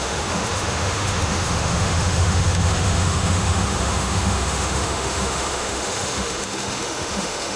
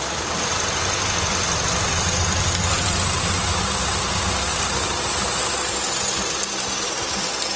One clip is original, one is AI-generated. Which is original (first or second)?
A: second